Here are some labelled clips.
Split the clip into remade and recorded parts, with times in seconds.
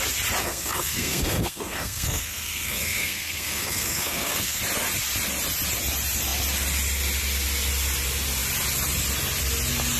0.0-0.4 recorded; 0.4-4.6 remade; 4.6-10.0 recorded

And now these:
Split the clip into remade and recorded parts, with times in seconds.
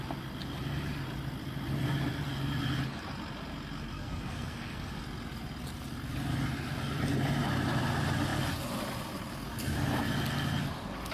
0.0-3.9 recorded; 3.9-5.0 remade; 5.0-11.1 recorded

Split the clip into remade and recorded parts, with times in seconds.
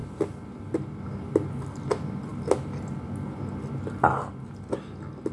0.0-5.3 recorded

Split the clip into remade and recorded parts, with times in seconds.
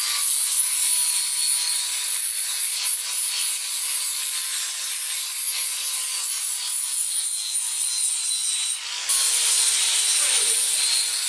0.0-11.3 recorded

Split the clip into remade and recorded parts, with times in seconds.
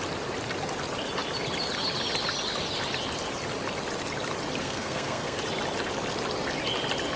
0.0-4.6 recorded; 4.6-5.4 remade; 5.4-7.2 recorded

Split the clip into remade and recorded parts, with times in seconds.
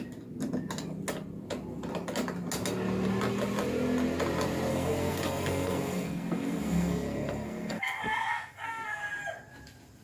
0.0-4.7 recorded; 4.7-9.0 remade; 9.0-10.0 recorded